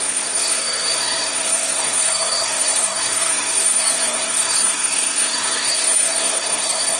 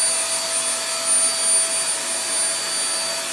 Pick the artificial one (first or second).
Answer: first